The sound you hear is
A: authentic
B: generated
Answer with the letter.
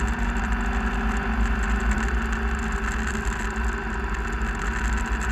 A